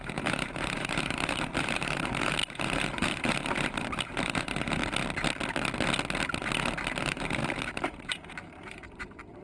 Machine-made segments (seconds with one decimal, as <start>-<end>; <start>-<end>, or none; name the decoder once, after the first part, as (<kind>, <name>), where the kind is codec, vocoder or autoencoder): 0.0-4.8 (vocoder, BigVGAN v2); 7.0-9.4